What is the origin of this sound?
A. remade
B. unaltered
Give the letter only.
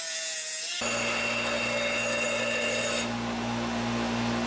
B